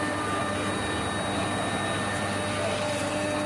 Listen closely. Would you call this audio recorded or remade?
recorded